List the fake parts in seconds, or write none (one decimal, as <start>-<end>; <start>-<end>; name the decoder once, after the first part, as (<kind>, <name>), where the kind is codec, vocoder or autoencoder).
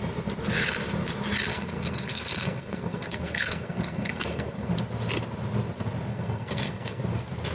1.5-4.7 (codec, SNAC); 6.1-7.0